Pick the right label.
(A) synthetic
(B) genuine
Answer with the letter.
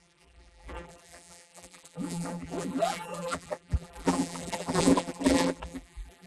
A